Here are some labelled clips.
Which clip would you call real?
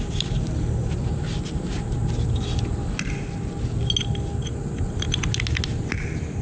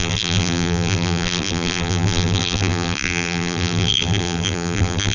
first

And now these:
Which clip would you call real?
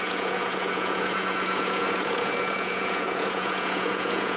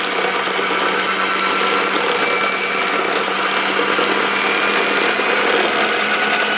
second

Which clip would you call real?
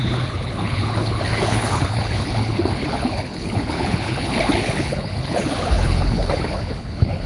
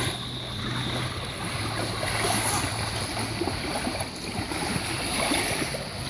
second